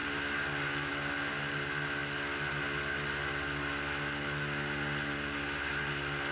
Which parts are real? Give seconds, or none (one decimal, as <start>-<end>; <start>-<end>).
0.0-6.3